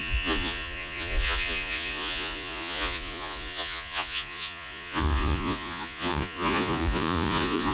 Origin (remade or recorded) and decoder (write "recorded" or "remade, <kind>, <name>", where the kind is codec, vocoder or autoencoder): remade, vocoder, Vocos